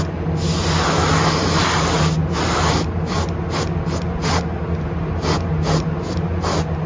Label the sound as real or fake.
real